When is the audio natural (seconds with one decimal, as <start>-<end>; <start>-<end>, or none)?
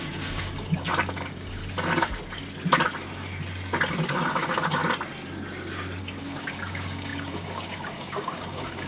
1.6-4.1; 4.8-6.0